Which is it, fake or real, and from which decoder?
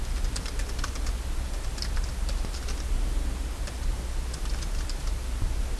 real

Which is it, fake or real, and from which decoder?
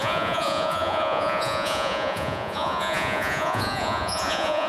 fake, vocoder, Vocos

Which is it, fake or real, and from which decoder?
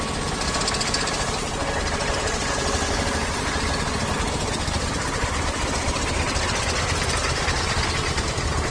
real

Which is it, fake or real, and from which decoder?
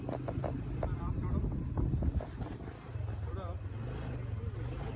real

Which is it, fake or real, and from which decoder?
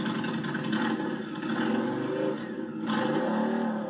real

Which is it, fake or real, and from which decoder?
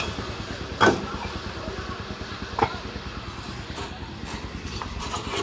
real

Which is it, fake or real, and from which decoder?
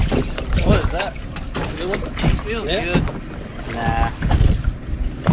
real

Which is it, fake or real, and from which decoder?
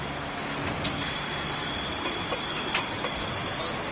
real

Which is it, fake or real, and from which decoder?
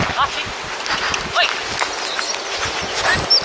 real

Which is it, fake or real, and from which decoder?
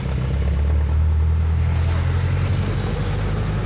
real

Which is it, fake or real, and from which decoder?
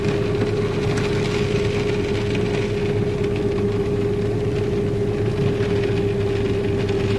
real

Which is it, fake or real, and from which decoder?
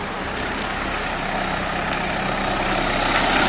real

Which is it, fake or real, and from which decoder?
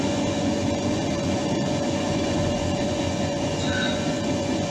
fake, vocoder, Vocos